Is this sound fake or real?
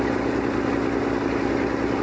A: real